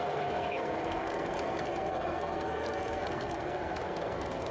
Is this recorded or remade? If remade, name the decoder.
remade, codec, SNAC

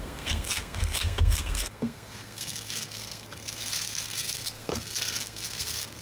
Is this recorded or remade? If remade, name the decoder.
remade, codec, SNAC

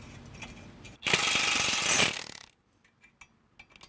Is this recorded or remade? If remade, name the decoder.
recorded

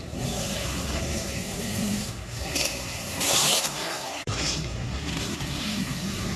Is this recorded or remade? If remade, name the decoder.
remade, codec, SNAC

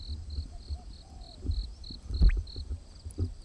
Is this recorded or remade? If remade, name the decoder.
recorded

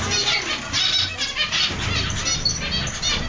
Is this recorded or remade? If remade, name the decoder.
recorded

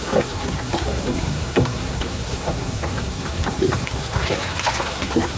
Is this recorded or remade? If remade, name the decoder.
remade, codec, SNAC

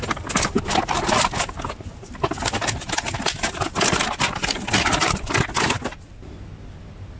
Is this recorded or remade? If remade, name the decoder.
recorded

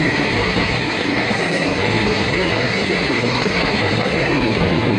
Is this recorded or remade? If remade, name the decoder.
remade, codec, SNAC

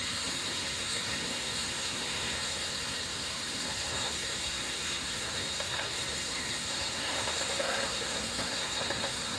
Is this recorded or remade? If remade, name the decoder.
remade, codec, SNAC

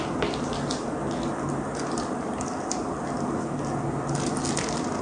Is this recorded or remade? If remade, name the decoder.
recorded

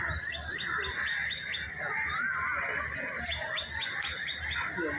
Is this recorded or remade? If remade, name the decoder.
recorded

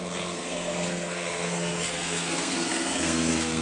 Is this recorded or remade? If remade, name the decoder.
remade, codec, SNAC